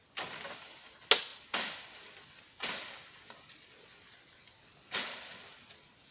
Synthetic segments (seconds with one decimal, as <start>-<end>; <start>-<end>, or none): none